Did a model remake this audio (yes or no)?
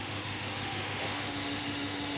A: yes